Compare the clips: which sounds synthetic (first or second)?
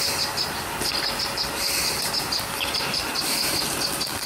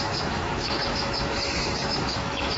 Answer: second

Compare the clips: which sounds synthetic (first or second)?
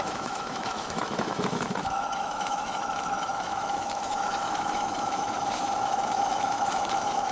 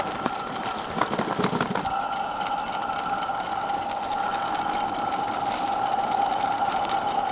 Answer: first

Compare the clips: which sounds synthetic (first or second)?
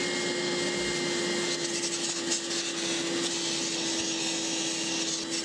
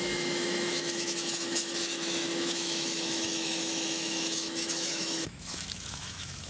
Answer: second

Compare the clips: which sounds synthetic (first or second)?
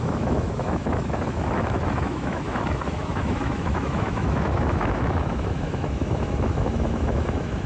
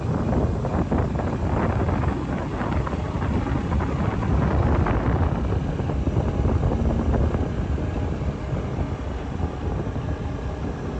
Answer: first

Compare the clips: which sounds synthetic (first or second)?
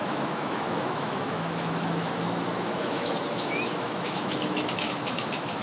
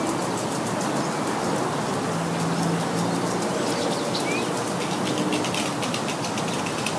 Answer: first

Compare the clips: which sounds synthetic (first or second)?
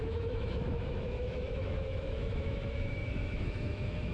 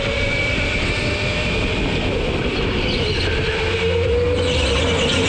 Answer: first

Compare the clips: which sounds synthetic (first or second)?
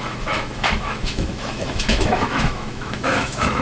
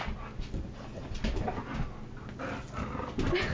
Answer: first